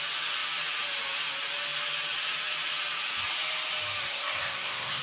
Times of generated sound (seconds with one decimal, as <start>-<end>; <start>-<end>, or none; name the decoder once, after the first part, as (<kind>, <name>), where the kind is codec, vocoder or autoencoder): 4.0-5.0 (codec, SNAC)